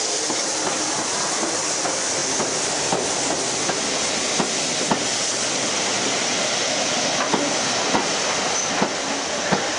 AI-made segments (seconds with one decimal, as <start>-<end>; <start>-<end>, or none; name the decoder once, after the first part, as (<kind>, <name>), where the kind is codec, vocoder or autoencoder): none